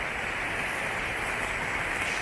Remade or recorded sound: recorded